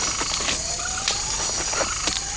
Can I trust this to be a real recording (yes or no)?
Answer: yes